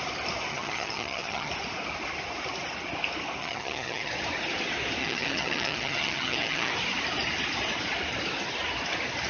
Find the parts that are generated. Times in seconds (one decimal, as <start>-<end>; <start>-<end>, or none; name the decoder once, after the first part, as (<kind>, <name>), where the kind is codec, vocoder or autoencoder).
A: 0.5-1.5 (vocoder, HiFi-GAN); 3.4-4.1; 5.0-6.7